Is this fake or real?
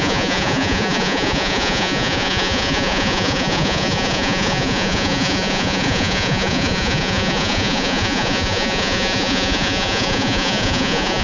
fake